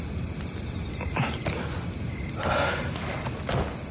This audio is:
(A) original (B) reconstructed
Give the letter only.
A